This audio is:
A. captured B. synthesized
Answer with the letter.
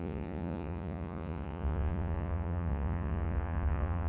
B